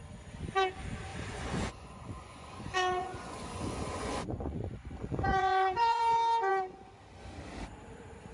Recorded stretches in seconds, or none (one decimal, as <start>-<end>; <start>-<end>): 0.0-1.1; 6.0-6.5; 7.0-8.3